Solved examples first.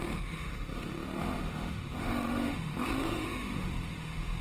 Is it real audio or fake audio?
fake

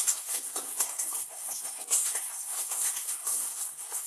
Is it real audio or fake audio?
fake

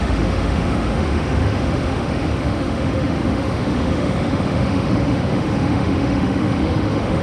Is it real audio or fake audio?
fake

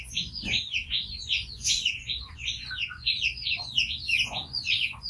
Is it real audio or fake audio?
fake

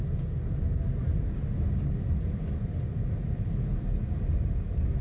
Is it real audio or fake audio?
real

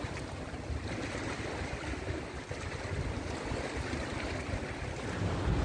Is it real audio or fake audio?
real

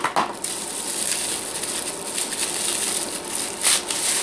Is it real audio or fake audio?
real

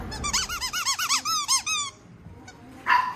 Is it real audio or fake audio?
real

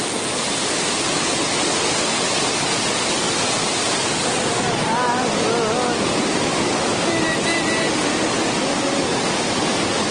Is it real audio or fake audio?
real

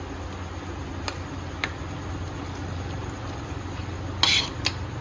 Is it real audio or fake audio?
real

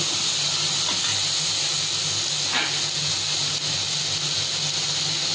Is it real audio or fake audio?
real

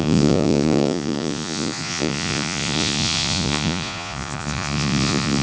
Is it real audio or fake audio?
fake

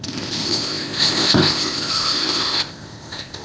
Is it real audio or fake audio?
fake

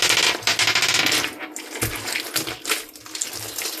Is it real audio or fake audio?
real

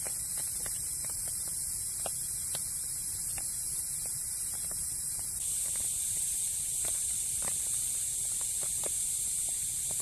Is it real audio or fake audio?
fake